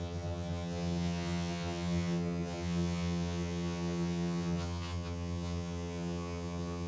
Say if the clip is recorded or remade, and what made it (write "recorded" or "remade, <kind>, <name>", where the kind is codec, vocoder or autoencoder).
remade, vocoder, HiFi-GAN